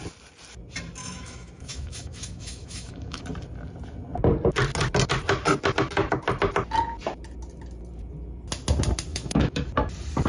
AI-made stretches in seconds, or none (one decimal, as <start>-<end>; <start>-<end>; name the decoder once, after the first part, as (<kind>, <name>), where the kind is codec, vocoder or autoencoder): 1.0-3.2 (autoencoder, DAC-VAE); 9.1-9.7